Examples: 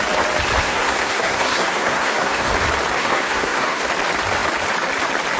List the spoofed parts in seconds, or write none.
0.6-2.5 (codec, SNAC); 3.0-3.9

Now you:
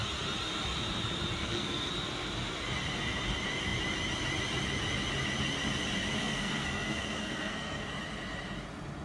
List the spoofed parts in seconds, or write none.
1.4-1.9 (codec, SNAC); 6.2-7.9

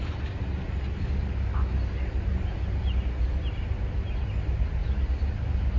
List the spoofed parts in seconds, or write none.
none

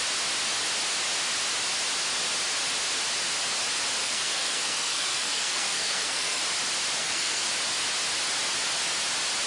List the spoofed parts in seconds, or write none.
4.0-6.4 (codec, SNAC); 7.0-7.5